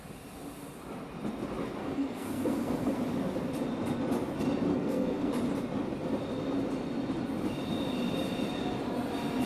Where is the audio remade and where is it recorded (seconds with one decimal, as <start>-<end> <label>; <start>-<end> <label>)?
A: 0.0-1.8 recorded; 1.8-3.0 remade; 3.0-4.7 recorded; 4.7-5.3 remade; 5.3-9.5 recorded